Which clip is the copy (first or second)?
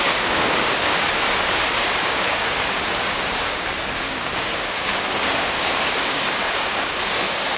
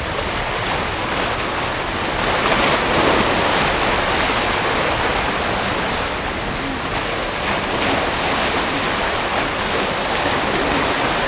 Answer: first